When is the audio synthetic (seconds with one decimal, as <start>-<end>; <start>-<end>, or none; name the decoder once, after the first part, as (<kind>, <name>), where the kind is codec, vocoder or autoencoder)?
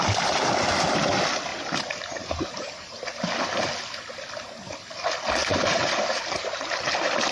1.5-3.0 (vocoder, BigVGAN v2); 5.4-6.6